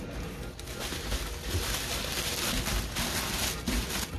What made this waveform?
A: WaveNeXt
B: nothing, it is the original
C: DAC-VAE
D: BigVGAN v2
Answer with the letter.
B